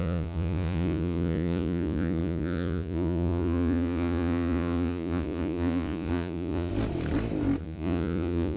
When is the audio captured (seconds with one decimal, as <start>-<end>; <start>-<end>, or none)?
6.7-7.6